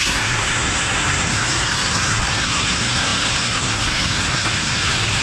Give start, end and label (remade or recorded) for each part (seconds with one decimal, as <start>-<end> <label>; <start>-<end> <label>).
0.0-5.2 remade